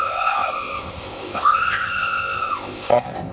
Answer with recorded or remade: remade